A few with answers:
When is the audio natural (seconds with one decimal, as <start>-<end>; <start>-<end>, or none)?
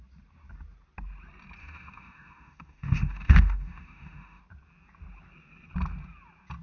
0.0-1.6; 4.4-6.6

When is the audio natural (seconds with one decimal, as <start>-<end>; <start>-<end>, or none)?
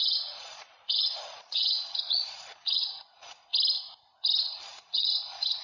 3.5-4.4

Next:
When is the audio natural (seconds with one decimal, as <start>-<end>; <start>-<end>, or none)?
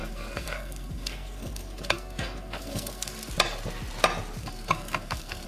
3.3-4.4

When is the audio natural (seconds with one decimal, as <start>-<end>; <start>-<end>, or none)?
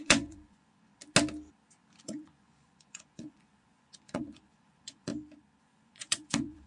0.9-2.0; 5.1-5.6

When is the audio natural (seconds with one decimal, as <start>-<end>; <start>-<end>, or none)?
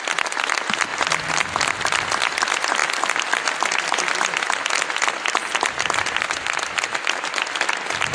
0.0-8.1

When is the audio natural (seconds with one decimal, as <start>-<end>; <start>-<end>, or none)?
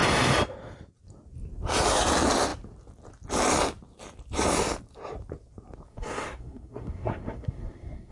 0.0-5.9